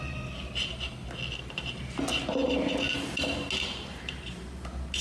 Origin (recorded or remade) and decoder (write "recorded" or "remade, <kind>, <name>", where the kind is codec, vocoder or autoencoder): recorded